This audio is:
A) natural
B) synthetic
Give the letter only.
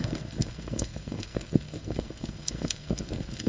B